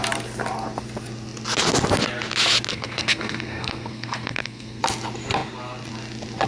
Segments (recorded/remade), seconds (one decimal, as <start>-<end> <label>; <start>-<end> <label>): 0.0-2.7 recorded; 2.7-4.8 remade; 4.8-6.5 recorded